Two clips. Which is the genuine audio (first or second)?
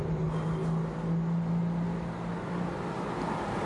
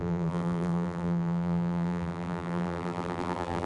first